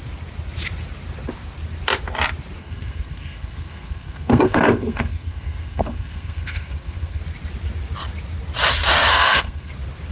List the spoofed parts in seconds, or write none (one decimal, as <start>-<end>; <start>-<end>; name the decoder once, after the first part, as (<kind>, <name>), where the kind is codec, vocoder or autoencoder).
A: 2.6-7.2 (codec, SNAC); 9.1-9.7